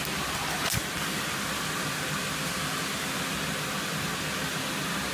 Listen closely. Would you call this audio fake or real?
real